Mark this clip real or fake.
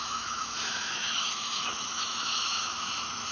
fake